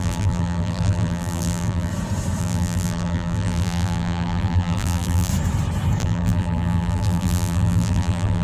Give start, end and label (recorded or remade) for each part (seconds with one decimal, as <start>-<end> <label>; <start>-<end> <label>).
0.0-1.9 remade; 1.9-2.4 recorded; 2.4-5.3 remade; 5.3-6.0 recorded; 6.0-8.4 remade